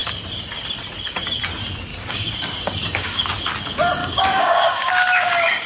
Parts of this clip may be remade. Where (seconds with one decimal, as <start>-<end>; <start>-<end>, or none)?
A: 1.9-3.3; 4.0-5.7